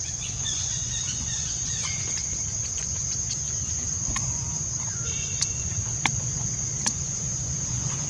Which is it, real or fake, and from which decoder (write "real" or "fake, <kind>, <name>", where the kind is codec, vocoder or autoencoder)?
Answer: fake, vocoder, Vocos